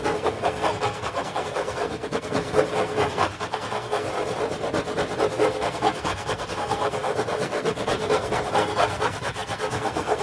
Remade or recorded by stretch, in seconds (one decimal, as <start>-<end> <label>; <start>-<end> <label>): 0.0-4.1 remade; 4.1-5.3 recorded; 5.3-10.2 remade